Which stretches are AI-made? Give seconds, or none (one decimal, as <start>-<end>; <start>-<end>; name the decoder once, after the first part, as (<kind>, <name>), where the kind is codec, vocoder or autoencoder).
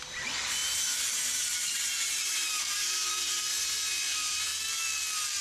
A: 0.0-4.5 (vocoder, BigVGAN v2)